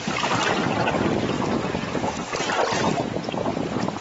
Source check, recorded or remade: recorded